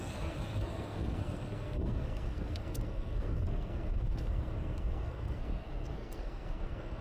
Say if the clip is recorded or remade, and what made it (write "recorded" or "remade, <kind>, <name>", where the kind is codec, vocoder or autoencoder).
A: remade, codec, SNAC